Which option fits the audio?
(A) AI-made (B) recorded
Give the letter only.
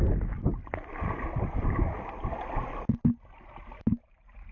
B